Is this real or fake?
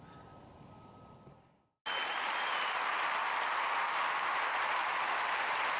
real